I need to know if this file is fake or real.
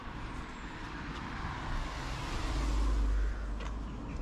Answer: real